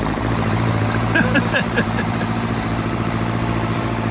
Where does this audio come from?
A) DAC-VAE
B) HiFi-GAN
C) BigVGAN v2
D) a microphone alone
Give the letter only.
C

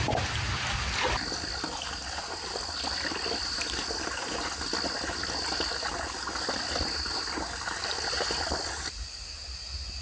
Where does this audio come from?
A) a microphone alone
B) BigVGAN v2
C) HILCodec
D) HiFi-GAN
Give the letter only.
A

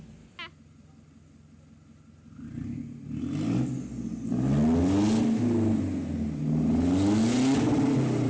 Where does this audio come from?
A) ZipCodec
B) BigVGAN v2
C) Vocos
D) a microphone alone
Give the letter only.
D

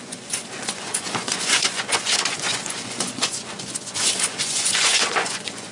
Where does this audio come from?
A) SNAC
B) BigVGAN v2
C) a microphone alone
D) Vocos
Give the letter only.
D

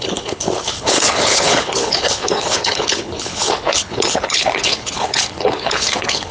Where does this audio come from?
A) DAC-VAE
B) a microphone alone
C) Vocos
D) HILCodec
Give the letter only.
D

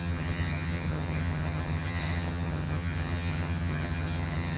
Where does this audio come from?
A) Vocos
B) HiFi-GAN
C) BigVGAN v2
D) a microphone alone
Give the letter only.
B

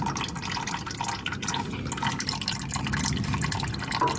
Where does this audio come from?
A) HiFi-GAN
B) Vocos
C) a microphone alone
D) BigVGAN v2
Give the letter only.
C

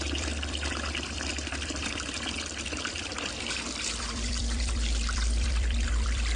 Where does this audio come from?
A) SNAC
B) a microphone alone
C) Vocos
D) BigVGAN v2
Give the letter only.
D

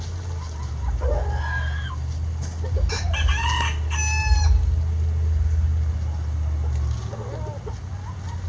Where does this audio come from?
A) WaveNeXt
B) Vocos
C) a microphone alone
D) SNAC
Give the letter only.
C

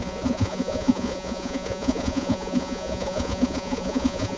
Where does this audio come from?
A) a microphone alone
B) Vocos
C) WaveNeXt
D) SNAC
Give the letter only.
B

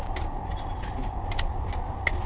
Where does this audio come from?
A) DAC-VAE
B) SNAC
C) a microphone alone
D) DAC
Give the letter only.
C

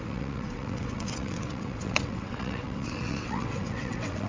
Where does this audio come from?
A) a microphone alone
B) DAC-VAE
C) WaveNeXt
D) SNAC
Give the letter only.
C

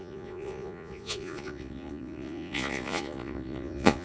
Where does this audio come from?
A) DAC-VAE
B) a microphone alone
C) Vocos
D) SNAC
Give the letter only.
C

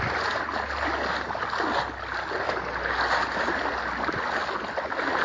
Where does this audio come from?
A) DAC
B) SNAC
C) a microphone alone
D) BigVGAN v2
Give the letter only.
C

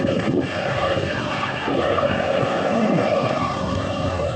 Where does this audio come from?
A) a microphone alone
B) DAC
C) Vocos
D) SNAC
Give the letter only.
D